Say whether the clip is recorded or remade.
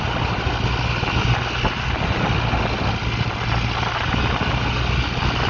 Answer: recorded